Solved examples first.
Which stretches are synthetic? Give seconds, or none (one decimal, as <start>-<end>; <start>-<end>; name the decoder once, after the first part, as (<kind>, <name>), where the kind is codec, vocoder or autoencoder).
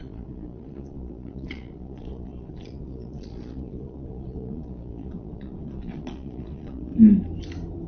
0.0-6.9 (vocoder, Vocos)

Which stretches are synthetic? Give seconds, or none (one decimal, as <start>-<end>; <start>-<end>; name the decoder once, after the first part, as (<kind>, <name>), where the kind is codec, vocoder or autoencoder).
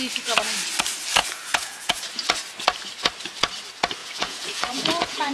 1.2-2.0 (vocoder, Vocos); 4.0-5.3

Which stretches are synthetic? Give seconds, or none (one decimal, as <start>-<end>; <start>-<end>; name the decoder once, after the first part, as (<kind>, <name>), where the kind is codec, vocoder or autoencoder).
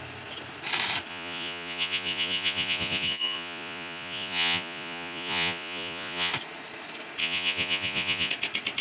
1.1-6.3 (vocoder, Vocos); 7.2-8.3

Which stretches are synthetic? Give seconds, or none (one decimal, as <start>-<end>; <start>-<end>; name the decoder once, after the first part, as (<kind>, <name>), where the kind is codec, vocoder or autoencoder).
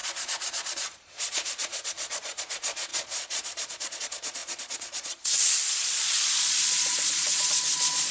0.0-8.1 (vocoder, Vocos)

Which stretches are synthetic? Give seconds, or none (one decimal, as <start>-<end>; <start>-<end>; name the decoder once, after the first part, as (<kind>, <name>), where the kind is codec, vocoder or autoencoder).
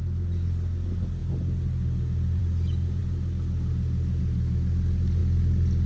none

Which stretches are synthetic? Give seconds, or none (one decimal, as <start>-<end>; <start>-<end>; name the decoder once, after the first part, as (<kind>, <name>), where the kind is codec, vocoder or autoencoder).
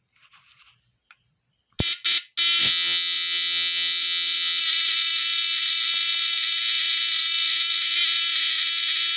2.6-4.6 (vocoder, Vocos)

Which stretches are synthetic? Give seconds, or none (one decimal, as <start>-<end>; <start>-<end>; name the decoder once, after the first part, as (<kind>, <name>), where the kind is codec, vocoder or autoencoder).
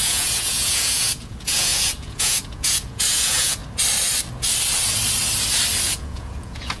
0.0-3.6 (vocoder, Vocos); 5.8-6.8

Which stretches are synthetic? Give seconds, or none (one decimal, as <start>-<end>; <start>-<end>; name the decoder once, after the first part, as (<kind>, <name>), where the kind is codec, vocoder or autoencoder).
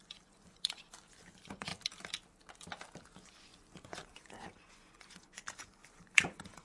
0.0-1.7 (vocoder, Vocos); 3.0-6.6